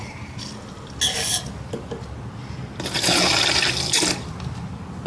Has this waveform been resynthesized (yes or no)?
no